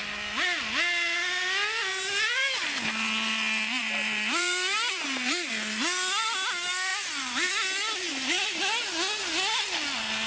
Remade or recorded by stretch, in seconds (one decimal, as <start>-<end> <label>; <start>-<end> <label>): 0.0-3.8 recorded; 3.8-5.5 remade; 5.5-6.9 recorded; 6.9-7.5 remade; 7.5-8.1 recorded; 8.1-8.6 remade; 8.6-10.3 recorded